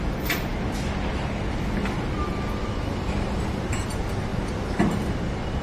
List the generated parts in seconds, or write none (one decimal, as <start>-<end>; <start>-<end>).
none